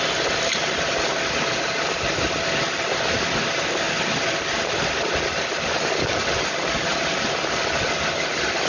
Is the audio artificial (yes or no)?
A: no